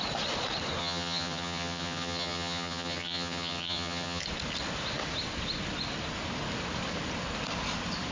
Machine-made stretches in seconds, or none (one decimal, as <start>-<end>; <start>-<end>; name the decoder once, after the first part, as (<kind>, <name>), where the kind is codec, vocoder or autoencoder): 0.8-4.2 (vocoder, HiFi-GAN)